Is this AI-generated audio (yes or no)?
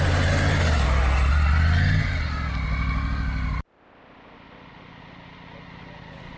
no